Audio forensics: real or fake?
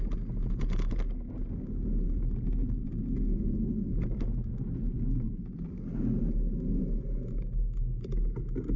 real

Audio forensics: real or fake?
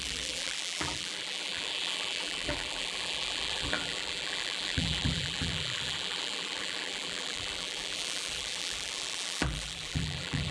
fake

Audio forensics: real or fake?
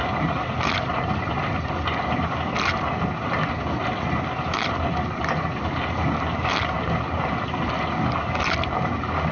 real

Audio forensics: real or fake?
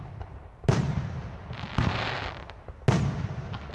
real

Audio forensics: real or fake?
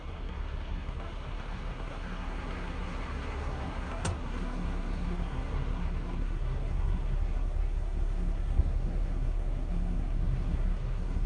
fake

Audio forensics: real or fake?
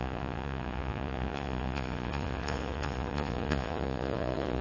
fake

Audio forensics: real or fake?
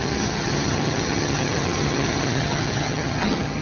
fake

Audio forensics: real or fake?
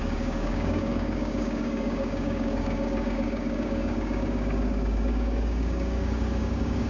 fake